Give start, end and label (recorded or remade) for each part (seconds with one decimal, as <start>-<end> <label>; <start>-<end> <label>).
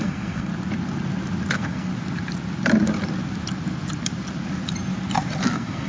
0.0-0.5 remade; 0.5-1.5 recorded; 1.5-1.9 remade; 1.9-5.4 recorded; 5.4-5.9 remade